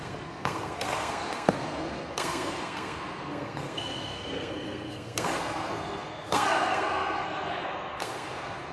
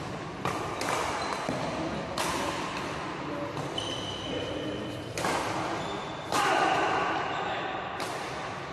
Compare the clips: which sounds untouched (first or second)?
second